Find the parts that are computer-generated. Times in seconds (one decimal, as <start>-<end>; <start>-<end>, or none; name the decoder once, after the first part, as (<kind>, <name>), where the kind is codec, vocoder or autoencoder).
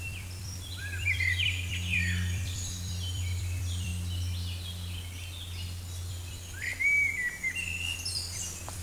0.0-3.9 (vocoder, BigVGAN v2); 6.1-6.7; 8.1-8.8